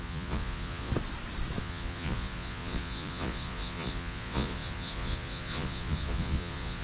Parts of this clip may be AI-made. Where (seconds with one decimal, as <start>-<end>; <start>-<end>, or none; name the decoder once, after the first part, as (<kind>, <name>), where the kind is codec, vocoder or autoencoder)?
0.0-0.9 (vocoder, Vocos); 1.6-6.8

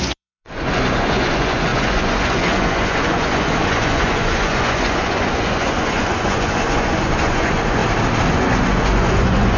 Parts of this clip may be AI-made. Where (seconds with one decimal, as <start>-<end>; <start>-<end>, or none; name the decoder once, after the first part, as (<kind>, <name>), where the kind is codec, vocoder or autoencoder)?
0.0-7.8 (vocoder, Vocos); 8.3-9.6

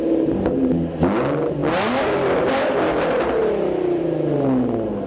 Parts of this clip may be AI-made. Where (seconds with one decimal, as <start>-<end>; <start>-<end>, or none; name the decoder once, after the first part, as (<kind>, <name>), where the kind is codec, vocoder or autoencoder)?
none

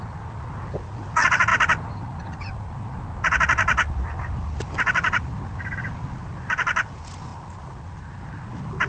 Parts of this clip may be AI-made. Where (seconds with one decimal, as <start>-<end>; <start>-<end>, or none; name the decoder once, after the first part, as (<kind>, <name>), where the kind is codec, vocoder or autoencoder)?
none

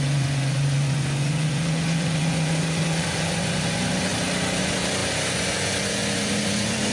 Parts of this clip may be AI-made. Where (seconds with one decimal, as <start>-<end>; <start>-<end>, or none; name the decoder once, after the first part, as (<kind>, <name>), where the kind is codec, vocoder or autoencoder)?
0.0-4.1 (vocoder, Vocos); 4.6-6.9

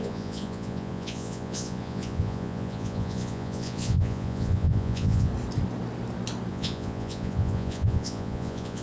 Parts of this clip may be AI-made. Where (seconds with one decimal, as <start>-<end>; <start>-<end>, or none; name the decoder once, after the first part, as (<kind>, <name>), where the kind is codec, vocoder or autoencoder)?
0.0-5.3 (vocoder, Vocos); 6.5-8.8

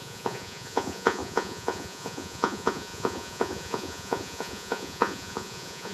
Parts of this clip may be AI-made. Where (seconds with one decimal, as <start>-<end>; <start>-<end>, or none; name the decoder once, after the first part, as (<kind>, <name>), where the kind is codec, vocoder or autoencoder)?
0.0-5.9 (vocoder, Vocos)

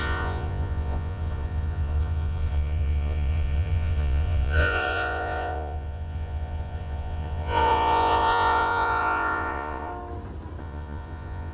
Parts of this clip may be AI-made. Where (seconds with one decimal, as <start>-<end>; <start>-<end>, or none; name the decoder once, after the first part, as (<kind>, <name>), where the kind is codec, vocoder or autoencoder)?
0.0-9.9 (vocoder, Vocos); 10.6-11.5